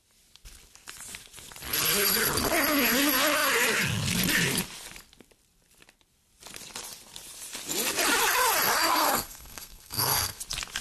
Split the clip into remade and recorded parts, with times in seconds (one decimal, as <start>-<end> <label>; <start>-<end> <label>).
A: 0.0-8.9 recorded; 8.9-10.4 remade; 10.4-10.8 recorded